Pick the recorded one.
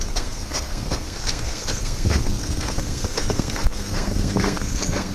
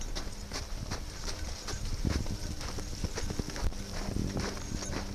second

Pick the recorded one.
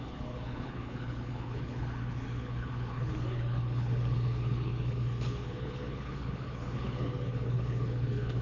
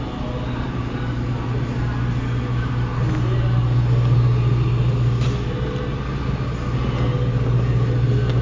second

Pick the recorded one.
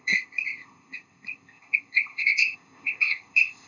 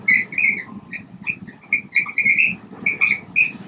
second